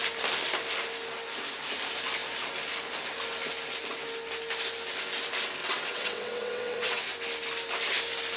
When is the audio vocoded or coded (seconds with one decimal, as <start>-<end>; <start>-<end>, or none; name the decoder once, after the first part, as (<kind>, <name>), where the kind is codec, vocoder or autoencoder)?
5.6-7.0 (vocoder, WaveNeXt)